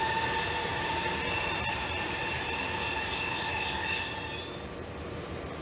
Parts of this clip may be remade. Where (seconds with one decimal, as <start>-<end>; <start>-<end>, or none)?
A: 0.0-5.6